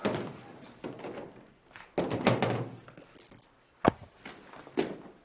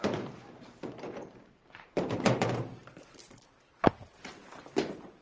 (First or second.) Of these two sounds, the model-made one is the second